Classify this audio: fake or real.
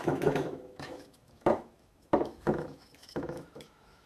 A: fake